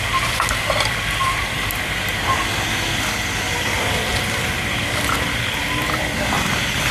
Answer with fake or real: real